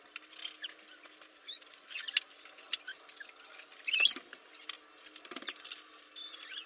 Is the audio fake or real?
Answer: real